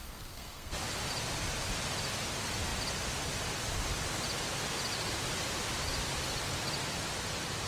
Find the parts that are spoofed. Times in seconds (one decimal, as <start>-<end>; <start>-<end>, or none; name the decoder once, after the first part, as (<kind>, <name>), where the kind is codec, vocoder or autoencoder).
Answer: 0.0-0.8 (codec, SNAC)